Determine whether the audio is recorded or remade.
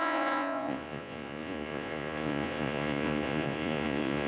remade